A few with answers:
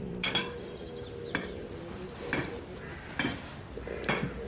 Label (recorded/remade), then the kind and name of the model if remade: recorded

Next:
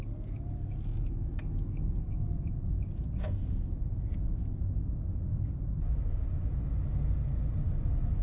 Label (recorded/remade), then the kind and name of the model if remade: recorded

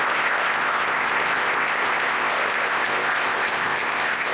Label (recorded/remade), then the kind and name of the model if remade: remade, codec, ZipCodec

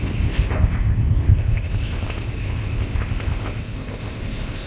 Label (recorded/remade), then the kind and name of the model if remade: remade, codec, ZipCodec